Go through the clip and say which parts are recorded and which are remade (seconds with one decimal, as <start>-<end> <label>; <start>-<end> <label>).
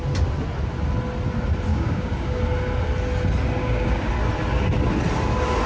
0.0-1.7 recorded; 1.7-2.4 remade; 2.4-3.6 recorded; 3.6-4.1 remade; 4.1-5.7 recorded